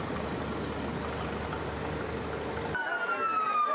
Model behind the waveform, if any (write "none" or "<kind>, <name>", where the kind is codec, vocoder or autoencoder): none